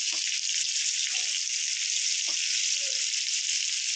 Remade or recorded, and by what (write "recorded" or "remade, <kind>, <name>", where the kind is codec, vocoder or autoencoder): recorded